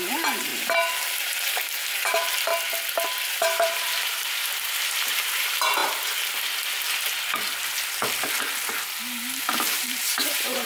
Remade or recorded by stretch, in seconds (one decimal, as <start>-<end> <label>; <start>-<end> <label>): 0.0-0.5 remade; 0.5-1.2 recorded; 1.2-2.5 remade; 2.5-3.3 recorded; 3.3-5.8 remade; 5.8-9.4 recorded; 9.4-10.7 remade